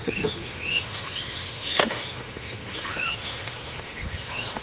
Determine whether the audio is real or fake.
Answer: fake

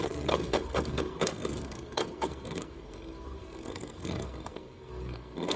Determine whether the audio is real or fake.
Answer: fake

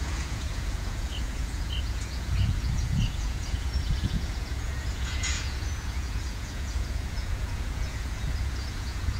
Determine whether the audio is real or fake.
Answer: fake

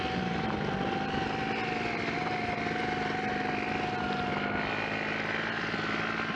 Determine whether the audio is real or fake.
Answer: real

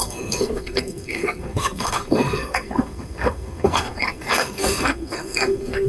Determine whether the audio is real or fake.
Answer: fake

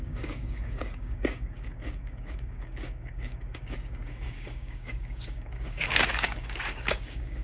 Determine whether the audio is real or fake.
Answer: fake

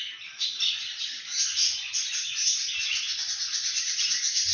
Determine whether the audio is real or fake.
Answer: real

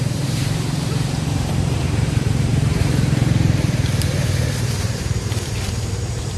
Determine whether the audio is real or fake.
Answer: fake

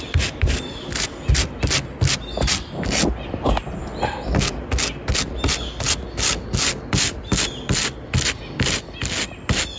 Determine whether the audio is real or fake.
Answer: real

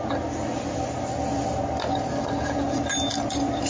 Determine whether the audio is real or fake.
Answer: real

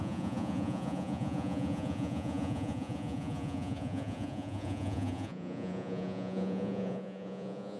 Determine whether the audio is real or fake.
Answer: fake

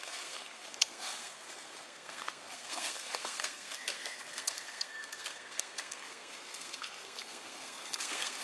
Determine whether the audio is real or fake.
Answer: fake